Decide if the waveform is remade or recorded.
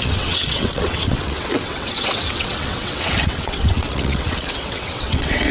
remade